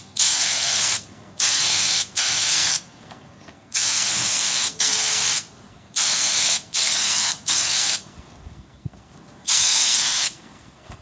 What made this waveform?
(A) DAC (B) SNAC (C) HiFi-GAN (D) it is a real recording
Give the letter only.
B